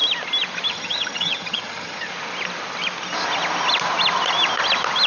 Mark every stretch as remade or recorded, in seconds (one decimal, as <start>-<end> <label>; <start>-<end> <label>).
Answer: 0.0-0.7 recorded; 0.7-2.1 remade; 2.1-5.1 recorded